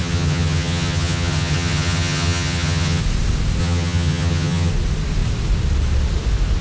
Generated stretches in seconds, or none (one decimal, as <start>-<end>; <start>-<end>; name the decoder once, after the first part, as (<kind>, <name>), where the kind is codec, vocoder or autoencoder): 0.0-3.0 (vocoder, HiFi-GAN); 3.6-4.7